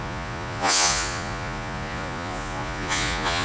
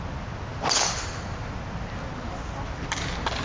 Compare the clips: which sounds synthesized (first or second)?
first